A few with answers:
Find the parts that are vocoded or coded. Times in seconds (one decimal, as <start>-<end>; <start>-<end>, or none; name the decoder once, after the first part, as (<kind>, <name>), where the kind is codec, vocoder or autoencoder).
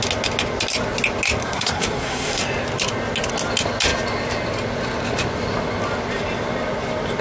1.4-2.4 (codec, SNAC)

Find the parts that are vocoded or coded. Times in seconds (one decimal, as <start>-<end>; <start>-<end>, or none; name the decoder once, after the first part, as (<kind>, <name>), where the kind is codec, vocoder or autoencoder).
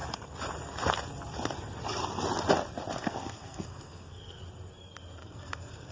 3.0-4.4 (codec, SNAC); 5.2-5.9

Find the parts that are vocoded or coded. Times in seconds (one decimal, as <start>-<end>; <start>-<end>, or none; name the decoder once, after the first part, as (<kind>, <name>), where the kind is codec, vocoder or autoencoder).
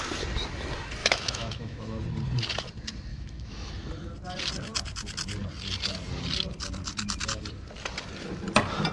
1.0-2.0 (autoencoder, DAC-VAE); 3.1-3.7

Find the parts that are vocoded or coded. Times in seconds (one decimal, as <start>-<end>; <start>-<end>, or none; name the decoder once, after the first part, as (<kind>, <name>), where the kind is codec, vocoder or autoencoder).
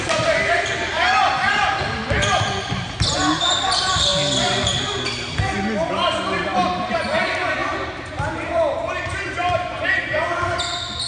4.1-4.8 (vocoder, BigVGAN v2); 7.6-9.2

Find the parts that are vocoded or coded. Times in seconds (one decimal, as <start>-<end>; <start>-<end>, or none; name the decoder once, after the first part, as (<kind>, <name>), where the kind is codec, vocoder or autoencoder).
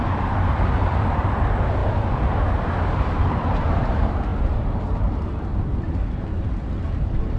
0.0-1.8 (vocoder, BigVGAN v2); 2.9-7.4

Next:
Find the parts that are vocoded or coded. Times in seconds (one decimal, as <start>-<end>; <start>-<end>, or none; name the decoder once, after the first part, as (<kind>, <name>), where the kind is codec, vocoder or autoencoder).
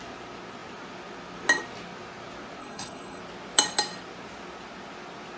2.6-3.2 (codec, HILCodec)